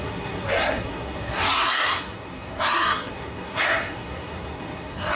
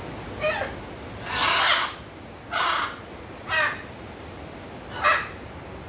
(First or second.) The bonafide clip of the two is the second